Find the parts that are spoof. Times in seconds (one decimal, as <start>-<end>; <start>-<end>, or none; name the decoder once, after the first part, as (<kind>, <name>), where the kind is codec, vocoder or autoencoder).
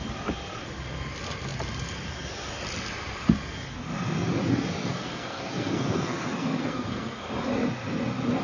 4.8-7.3 (codec, SNAC)